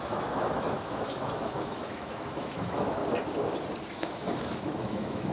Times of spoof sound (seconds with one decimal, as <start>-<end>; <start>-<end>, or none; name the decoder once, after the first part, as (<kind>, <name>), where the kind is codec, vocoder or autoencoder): 0.0-3.0 (autoencoder, DAC-VAE); 3.9-5.3